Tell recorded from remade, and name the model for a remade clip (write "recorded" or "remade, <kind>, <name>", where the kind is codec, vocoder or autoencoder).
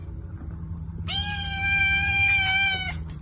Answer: remade, vocoder, BigVGAN v2